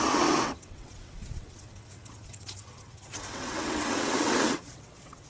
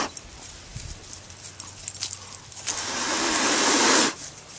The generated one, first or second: first